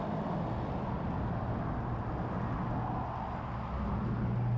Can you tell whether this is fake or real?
real